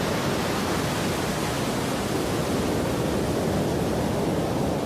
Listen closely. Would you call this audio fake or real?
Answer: real